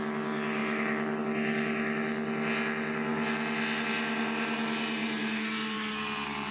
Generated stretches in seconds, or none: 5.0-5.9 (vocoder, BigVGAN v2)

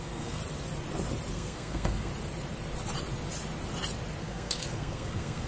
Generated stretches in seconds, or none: 0.0-0.4 (codec, SNAC); 1.3-2.1; 4.2-5.5

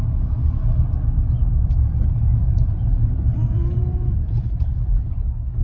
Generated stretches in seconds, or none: 2.4-5.1 (vocoder, BigVGAN v2)